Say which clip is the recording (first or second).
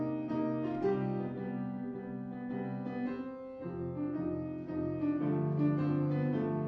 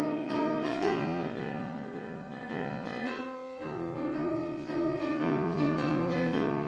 first